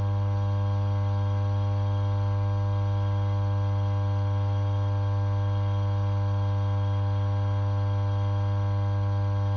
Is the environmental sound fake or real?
real